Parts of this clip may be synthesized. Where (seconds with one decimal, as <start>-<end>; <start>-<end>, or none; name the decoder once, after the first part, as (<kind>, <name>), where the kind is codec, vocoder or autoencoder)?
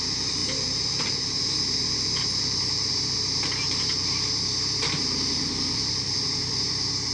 0.0-7.1 (vocoder, BigVGAN v2)